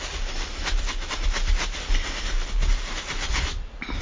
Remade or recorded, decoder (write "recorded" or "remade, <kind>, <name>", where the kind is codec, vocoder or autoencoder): recorded